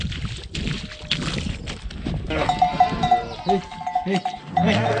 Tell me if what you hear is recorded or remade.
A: recorded